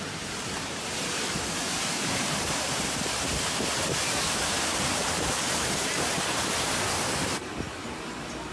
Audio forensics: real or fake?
fake